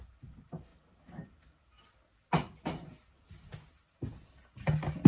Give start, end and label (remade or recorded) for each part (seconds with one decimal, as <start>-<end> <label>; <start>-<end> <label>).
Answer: 0.0-5.1 recorded